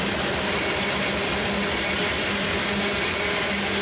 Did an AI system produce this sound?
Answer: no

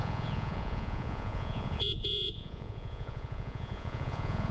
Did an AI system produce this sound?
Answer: yes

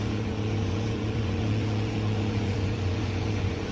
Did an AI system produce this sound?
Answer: yes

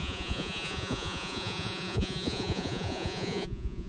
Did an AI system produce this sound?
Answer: yes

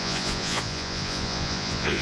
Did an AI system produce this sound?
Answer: yes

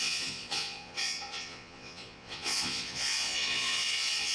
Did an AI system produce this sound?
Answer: yes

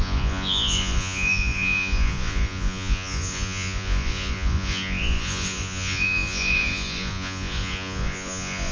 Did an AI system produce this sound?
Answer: yes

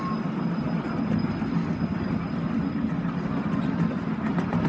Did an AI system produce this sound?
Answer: no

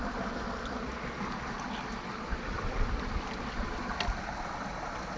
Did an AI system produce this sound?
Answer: no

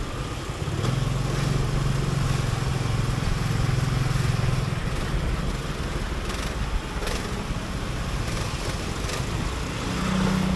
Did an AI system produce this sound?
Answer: no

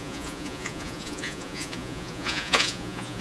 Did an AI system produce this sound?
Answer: yes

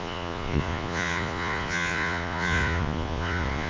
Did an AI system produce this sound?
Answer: yes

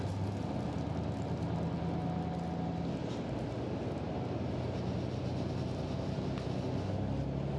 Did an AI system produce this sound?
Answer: no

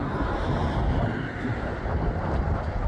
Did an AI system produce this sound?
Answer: no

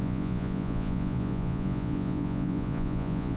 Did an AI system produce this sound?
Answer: yes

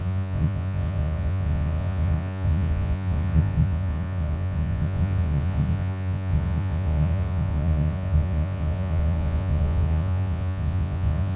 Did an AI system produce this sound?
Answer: yes